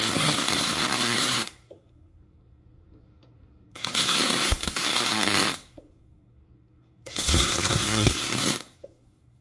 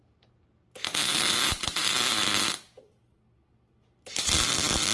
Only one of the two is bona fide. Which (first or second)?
second